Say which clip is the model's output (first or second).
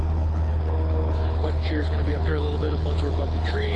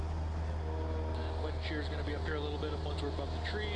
first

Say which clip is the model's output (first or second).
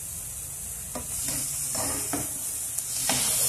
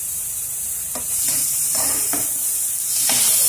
second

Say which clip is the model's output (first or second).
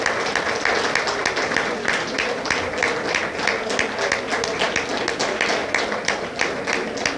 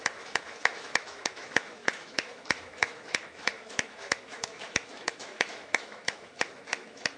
second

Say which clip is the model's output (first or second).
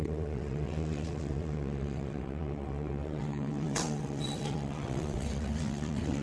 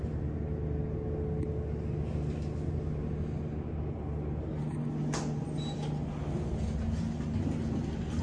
first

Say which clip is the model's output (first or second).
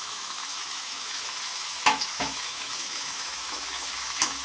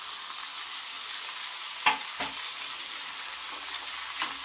first